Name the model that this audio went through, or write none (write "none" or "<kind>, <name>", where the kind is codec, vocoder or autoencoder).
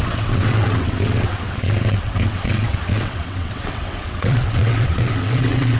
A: vocoder, WaveNeXt